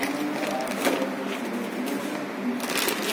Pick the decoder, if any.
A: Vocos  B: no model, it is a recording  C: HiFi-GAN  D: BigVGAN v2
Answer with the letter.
B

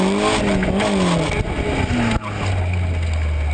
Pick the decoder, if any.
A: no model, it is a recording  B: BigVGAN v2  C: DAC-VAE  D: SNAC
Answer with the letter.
A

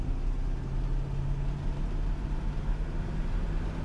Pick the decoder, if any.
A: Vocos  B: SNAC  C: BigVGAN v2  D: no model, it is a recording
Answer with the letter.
D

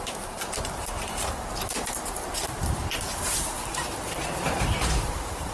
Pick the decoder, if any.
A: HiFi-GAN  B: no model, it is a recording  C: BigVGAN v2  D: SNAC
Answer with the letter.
C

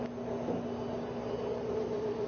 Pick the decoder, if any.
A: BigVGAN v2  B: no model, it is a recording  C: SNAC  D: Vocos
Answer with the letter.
B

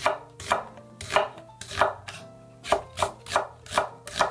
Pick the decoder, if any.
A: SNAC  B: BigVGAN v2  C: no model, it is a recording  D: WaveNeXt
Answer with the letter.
C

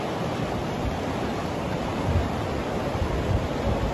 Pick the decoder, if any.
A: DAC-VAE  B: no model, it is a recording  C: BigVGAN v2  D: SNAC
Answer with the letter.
C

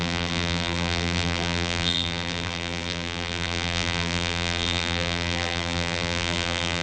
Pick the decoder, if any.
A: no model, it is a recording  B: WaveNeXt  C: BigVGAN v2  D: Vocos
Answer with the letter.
C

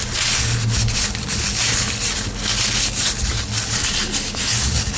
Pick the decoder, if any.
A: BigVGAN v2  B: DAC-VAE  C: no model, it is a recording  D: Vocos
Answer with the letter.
C